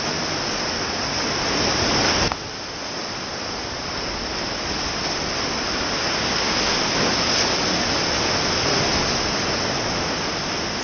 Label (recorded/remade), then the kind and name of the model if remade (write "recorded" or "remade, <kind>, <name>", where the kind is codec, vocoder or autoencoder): recorded